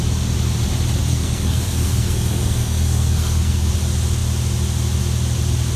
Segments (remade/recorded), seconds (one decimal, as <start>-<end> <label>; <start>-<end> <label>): 0.0-1.1 recorded; 1.1-3.7 remade; 3.7-5.8 recorded